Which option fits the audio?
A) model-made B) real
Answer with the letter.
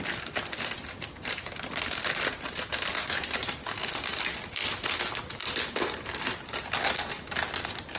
B